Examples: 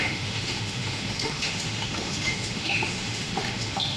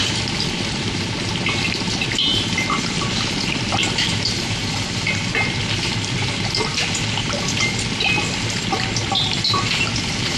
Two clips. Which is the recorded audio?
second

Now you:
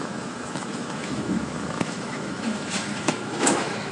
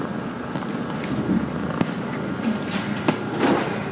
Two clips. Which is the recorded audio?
second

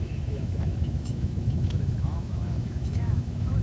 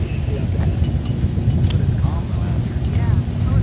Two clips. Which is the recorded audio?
second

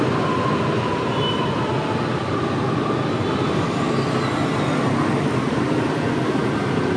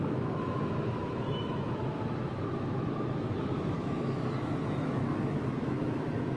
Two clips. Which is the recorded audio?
first